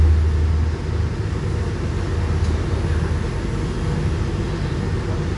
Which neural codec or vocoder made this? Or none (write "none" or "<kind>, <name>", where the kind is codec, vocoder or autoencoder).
none